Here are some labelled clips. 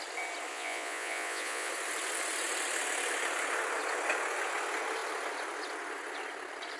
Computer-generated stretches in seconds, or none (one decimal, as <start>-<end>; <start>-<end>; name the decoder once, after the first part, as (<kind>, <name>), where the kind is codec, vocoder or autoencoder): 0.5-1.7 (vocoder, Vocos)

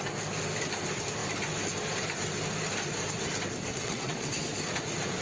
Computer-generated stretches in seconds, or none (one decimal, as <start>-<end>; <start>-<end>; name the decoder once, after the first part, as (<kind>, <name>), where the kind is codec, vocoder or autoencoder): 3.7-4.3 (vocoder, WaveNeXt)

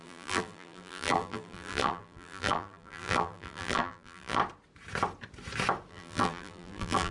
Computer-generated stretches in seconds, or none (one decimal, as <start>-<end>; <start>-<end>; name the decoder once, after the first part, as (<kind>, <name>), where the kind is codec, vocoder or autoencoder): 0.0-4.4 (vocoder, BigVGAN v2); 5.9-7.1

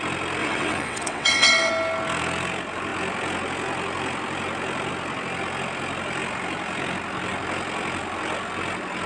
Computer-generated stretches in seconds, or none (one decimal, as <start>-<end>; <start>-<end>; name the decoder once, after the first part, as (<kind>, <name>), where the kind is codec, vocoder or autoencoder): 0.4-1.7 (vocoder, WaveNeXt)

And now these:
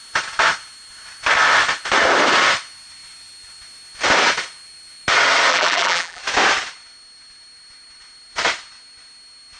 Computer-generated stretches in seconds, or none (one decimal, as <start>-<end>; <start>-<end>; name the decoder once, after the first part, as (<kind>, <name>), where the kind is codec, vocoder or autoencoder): 5.5-6.2 (vocoder, BigVGAN v2)